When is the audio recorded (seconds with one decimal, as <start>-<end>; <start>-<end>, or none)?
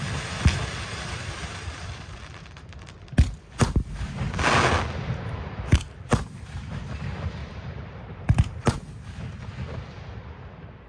0.0-0.9; 2.7-7.4; 9.2-10.9